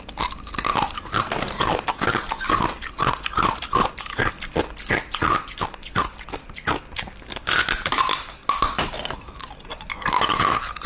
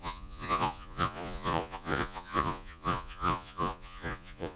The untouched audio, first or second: first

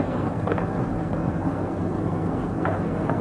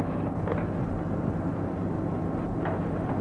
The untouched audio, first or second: second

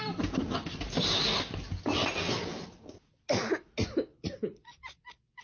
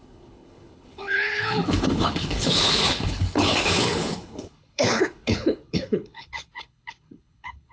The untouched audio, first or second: first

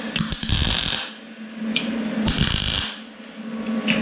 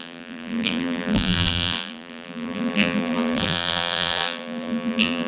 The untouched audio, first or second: first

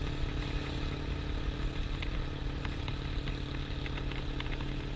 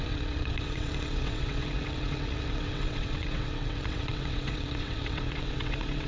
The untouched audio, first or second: first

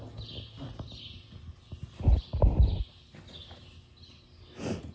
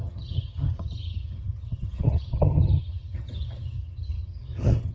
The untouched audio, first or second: first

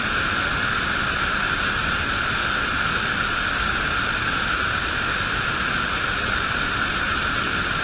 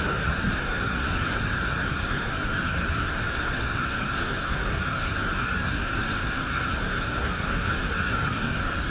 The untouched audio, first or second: first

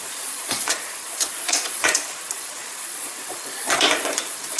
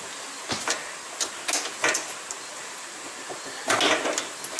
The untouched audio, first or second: second